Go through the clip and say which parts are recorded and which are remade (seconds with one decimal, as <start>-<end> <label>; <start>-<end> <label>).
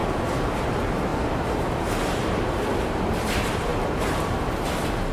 0.0-0.6 recorded; 0.6-5.1 remade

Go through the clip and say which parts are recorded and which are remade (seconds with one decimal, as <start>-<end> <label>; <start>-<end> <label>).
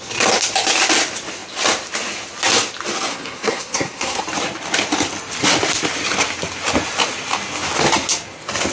0.0-3.1 recorded; 3.1-4.2 remade; 4.2-8.7 recorded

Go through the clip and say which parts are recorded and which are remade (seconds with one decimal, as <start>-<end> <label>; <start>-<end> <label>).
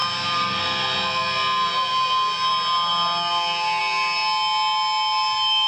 0.0-5.7 recorded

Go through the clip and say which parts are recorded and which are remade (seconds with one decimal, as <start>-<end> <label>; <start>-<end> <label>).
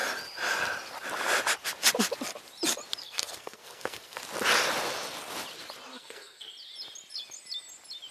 0.0-3.0 recorded; 3.0-4.2 remade; 4.2-5.9 recorded; 5.9-6.5 remade; 6.5-8.1 recorded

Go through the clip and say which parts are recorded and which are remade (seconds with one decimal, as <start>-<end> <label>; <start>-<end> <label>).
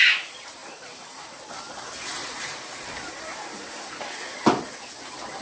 0.0-0.6 recorded; 0.6-1.4 remade; 1.4-2.2 recorded; 2.2-4.2 remade; 4.2-5.4 recorded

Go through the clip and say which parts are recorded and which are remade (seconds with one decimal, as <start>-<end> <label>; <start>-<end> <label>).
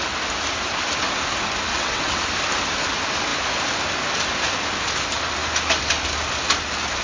0.0-1.7 recorded; 1.7-2.2 remade; 2.2-7.0 recorded